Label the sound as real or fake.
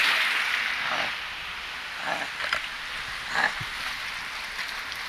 real